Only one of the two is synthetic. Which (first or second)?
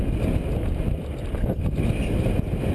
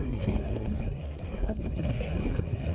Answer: second